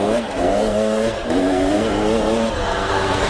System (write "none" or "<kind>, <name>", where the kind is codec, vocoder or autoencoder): codec, SNAC